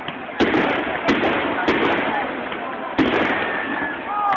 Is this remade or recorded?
recorded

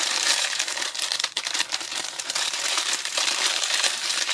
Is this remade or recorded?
remade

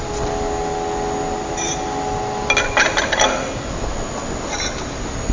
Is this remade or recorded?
recorded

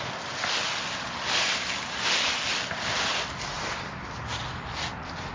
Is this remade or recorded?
recorded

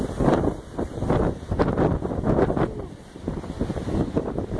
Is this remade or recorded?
recorded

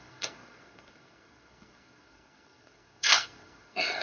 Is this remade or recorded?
remade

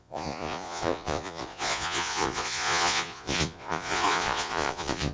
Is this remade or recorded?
remade